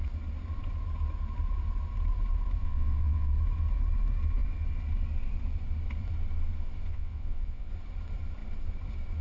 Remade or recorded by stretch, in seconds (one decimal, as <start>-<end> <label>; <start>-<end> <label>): 0.0-2.6 recorded; 2.6-3.3 remade; 3.3-6.9 recorded; 6.9-7.7 remade; 7.7-9.2 recorded